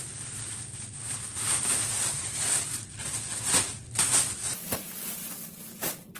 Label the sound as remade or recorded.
recorded